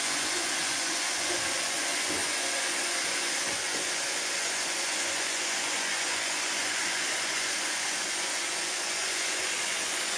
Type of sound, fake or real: fake